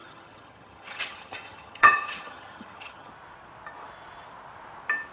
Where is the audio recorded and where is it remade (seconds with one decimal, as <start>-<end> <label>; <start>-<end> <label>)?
0.0-3.1 remade; 3.1-5.1 recorded